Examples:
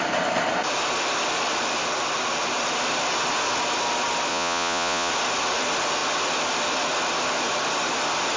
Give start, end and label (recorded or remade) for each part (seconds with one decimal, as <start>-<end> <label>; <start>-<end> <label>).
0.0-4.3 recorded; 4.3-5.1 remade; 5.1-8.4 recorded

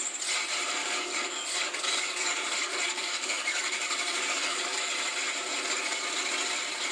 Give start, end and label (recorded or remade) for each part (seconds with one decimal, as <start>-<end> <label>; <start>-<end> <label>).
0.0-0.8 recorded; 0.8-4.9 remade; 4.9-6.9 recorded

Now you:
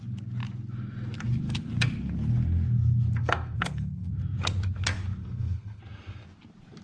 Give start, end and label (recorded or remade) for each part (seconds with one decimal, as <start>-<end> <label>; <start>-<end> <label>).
0.0-3.2 recorded; 3.2-4.1 remade; 4.1-5.2 recorded; 5.2-5.8 remade; 5.8-6.8 recorded

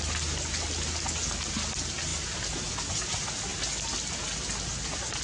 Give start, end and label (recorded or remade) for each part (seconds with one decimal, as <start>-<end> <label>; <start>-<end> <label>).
0.0-5.2 recorded

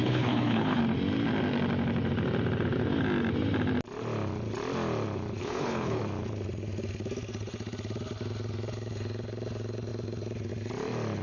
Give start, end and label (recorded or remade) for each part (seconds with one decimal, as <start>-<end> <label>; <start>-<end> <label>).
0.0-0.8 remade; 0.8-5.4 recorded; 5.4-6.0 remade; 6.0-11.2 recorded